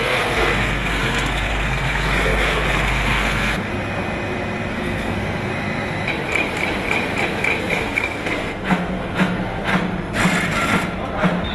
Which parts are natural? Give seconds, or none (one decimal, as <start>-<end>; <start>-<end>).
3.7-4.7; 5.5-7.6; 9.7-11.5